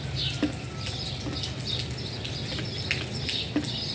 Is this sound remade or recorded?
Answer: recorded